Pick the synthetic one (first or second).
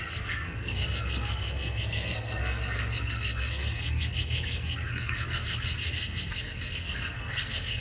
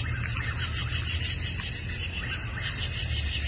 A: first